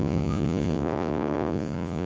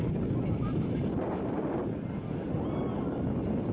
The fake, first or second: first